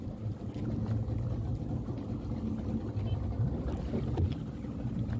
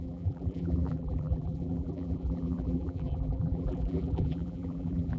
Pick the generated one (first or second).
second